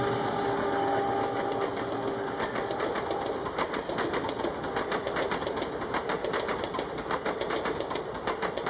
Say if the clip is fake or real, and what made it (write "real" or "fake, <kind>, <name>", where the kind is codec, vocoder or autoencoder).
real